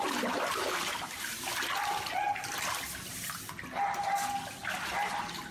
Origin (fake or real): real